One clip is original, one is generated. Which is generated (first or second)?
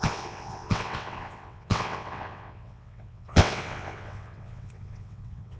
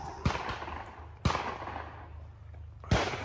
first